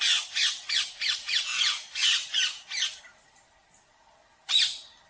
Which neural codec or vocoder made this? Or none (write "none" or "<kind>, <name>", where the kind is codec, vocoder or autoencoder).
none